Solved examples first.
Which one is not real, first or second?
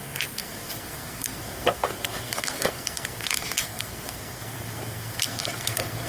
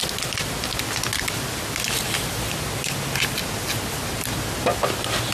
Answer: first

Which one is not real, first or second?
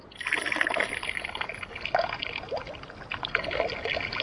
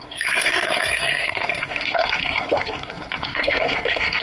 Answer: second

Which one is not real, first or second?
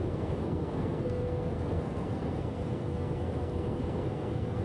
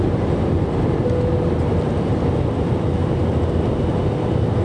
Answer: first